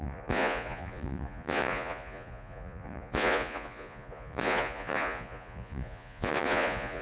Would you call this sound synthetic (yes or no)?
yes